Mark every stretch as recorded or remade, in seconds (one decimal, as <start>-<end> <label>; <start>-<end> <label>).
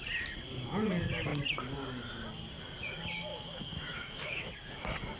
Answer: 0.0-3.3 recorded; 3.3-4.5 remade; 4.5-5.2 recorded